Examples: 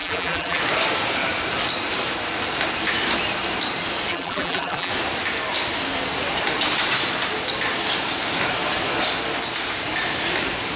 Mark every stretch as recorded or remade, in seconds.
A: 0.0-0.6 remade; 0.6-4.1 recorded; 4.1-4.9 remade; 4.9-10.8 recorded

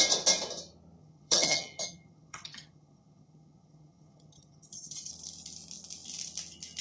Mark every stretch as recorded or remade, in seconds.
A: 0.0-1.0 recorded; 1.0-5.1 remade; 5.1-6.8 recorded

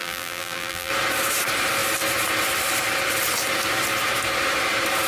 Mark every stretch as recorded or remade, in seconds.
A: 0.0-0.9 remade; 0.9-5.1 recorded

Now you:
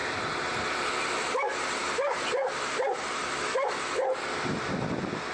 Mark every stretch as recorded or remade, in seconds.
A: 0.0-5.3 recorded

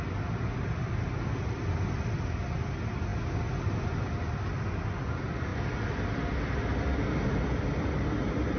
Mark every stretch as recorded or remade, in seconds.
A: 0.0-8.6 recorded